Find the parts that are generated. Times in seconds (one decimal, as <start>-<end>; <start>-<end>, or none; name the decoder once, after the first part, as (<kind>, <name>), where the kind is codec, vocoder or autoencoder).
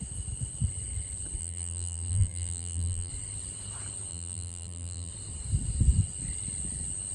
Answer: 1.4-3.1 (vocoder, BigVGAN v2); 4.1-5.1